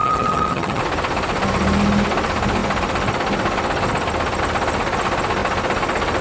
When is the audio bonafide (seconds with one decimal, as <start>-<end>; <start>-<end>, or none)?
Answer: 0.8-6.2